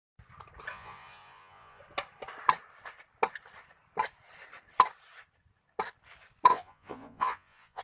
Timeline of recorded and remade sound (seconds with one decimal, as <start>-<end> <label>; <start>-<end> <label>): 0.0-0.7 recorded; 0.7-1.8 remade; 1.8-6.5 recorded; 6.5-7.8 remade

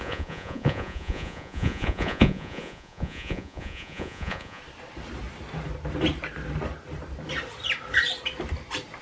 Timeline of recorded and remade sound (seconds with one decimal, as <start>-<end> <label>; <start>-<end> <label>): 0.0-4.6 remade; 4.6-9.0 recorded